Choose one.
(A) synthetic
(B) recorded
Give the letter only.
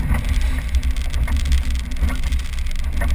B